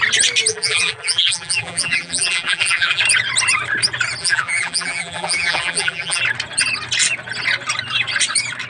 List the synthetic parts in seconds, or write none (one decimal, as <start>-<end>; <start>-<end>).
0.5-3.0; 4.2-6.2